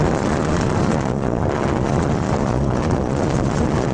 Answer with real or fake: fake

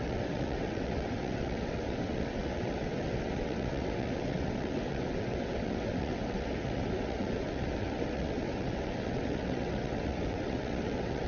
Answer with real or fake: fake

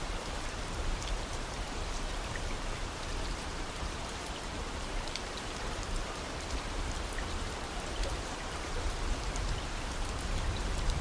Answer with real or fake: fake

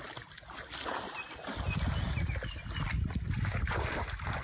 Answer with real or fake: real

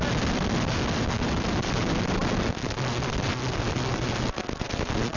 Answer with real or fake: real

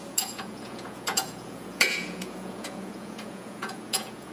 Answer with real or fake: fake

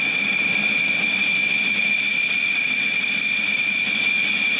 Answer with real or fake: real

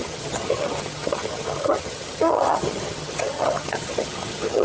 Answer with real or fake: fake